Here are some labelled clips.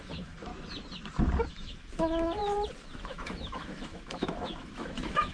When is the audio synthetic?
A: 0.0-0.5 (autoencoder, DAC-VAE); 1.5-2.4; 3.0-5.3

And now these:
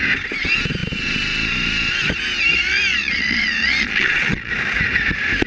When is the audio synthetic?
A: 2.9-4.5 (vocoder, Vocos)

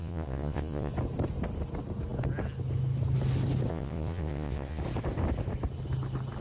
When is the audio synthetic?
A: 0.0-0.9 (vocoder, Vocos); 3.7-4.8